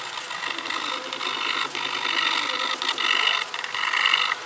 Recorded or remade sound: recorded